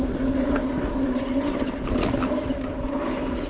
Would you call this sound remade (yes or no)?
no